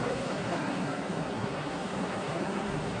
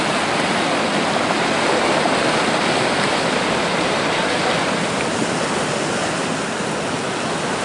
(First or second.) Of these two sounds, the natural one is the second